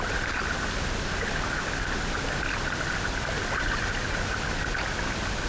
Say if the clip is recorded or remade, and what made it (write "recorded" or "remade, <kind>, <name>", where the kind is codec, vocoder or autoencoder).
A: recorded